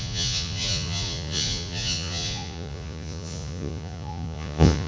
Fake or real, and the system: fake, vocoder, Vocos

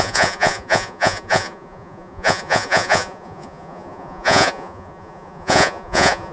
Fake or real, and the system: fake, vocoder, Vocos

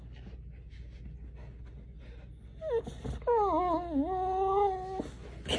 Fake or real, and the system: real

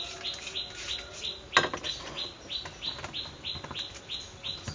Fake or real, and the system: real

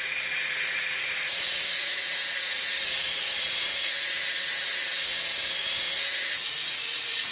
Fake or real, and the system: fake, vocoder, Vocos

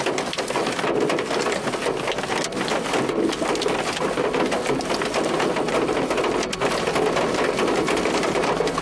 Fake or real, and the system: real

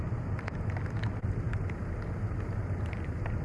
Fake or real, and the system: real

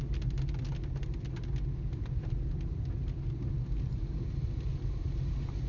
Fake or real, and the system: real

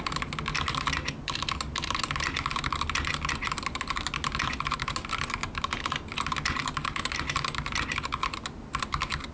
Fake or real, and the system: real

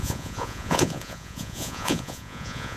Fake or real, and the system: fake, vocoder, Vocos